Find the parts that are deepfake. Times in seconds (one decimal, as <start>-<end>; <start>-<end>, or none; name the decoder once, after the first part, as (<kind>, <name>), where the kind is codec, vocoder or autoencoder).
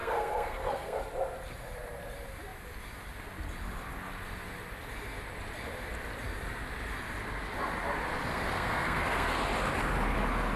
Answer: 0.0-1.0 (codec, SNAC); 8.3-9.4